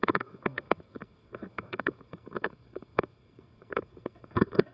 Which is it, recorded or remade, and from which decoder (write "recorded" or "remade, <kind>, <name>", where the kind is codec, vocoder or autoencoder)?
remade, codec, SNAC